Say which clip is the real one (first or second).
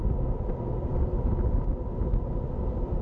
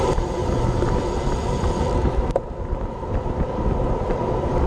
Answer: first